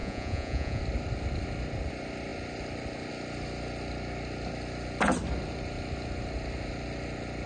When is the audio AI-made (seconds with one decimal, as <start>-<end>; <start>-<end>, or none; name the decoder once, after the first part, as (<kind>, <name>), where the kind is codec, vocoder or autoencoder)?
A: 0.0-0.8 (vocoder, Vocos)